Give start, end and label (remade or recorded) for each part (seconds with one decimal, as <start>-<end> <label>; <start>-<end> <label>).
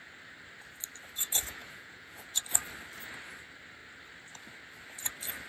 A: 0.0-1.6 recorded; 1.6-2.4 remade; 2.4-5.5 recorded